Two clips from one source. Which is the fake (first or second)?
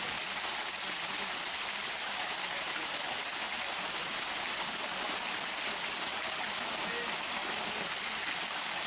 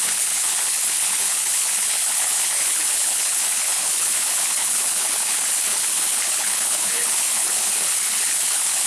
second